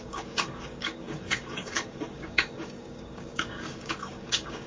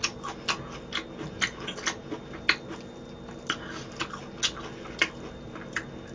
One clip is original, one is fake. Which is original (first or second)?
second